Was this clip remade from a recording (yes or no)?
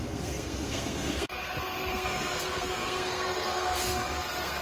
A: yes